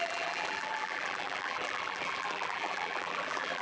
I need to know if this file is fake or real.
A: fake